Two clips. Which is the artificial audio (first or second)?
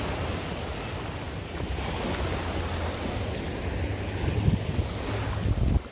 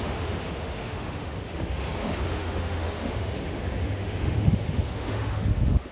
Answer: second